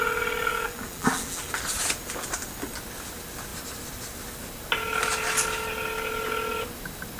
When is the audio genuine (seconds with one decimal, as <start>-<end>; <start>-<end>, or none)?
0.0-0.5; 1.5-7.2